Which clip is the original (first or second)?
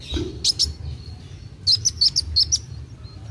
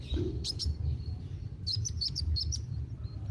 first